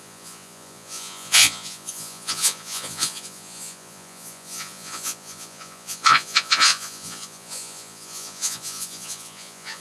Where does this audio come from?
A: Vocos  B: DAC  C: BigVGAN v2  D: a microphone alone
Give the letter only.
A